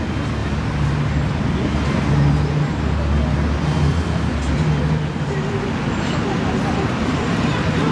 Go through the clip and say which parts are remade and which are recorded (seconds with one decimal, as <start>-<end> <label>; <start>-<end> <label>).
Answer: 0.0-7.9 recorded